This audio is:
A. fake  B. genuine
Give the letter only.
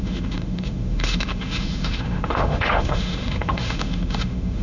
A